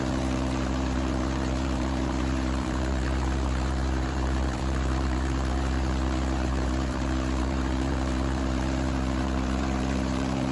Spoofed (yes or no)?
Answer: yes